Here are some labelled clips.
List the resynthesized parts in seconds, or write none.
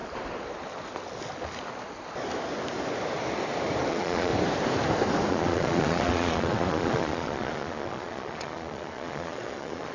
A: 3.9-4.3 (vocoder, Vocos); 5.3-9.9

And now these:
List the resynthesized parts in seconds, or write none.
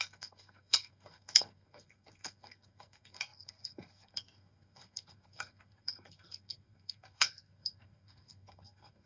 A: 0.0-9.1 (codec, SNAC)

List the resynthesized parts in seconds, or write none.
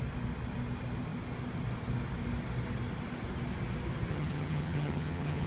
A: 4.1-5.5 (vocoder, HiFi-GAN)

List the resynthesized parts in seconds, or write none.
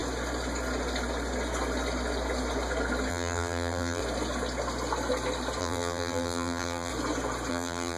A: 3.1-4.0 (vocoder, BigVGAN v2); 5.6-6.9; 7.5-8.0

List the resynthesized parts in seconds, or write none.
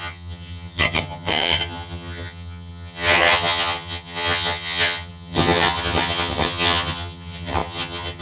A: 0.0-8.2 (vocoder, HiFi-GAN)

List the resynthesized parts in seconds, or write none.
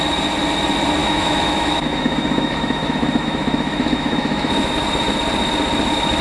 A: 1.0-4.7 (autoencoder, DAC-VAE)